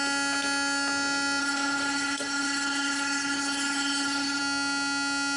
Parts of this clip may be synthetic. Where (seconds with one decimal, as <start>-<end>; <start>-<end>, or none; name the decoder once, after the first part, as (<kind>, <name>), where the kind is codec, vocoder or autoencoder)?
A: 1.4-4.4 (codec, HILCodec)